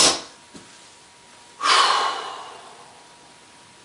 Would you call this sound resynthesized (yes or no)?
no